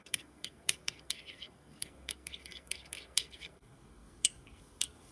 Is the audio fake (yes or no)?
yes